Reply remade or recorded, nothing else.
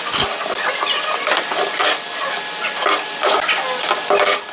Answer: recorded